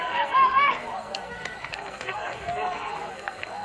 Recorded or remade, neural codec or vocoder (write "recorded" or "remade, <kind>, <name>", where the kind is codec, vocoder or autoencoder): remade, codec, SNAC